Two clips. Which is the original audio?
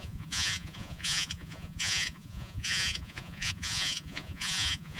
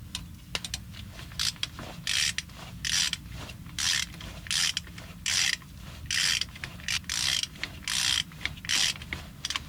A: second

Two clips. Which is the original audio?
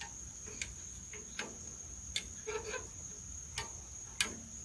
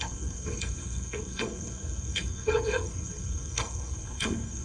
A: first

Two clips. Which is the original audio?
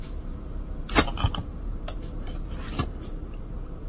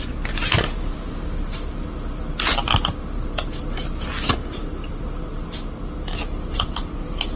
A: second